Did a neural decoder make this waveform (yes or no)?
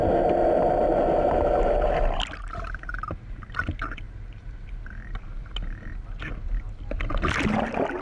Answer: no